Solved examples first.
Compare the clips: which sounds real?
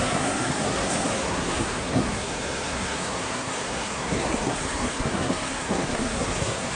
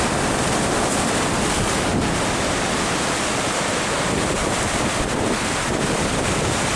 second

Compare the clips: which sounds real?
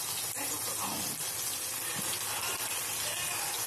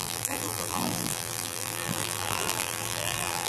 first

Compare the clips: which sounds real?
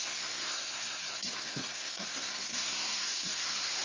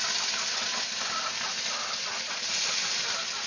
second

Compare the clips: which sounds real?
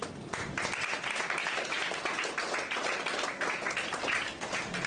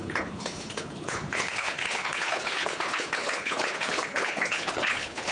first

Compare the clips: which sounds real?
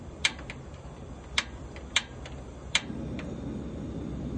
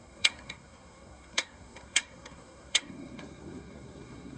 first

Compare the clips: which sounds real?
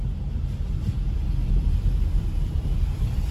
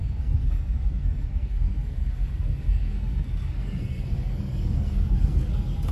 first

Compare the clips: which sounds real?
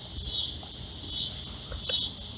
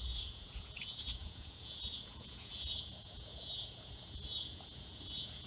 first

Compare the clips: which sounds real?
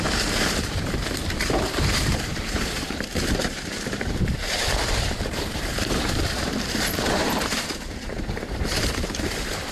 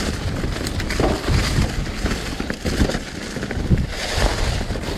second